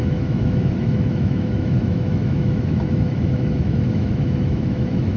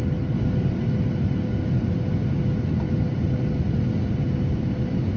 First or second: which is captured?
second